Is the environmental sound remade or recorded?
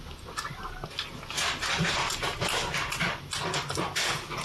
recorded